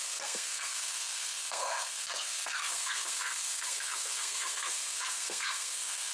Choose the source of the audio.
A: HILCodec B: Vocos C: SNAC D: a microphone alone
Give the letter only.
C